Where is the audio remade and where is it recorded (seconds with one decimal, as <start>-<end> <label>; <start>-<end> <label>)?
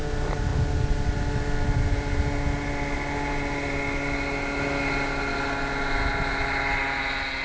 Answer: 0.0-7.4 recorded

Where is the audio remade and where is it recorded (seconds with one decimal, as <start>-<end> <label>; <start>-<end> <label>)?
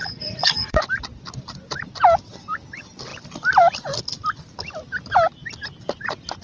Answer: 0.0-0.8 remade; 0.8-6.4 recorded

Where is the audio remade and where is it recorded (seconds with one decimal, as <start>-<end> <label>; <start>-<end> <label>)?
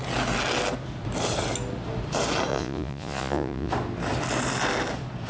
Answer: 0.0-2.5 recorded; 2.5-3.7 remade; 3.7-5.3 recorded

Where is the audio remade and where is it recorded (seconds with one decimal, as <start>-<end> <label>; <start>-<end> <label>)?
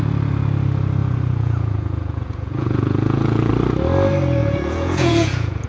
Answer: 0.0-1.0 recorded; 1.0-3.5 remade; 3.5-4.4 recorded; 4.4-5.7 remade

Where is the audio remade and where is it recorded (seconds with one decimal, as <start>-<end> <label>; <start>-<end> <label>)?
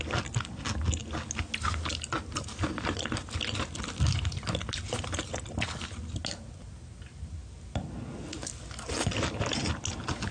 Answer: 0.0-10.3 recorded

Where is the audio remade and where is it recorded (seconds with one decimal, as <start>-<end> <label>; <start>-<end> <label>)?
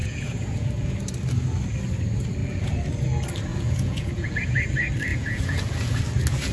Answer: 0.0-1.0 remade; 1.0-2.4 recorded; 2.4-3.1 remade; 3.1-3.5 recorded; 3.5-4.3 remade; 4.3-5.1 recorded; 5.1-6.0 remade; 6.0-6.5 recorded